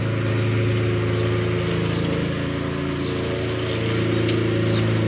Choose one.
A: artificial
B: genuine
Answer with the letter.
B